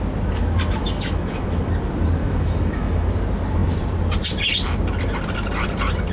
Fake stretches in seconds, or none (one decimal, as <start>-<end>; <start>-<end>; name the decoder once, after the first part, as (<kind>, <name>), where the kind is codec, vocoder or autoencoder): 0.8-1.7 (autoencoder, DAC-VAE); 2.2-3.1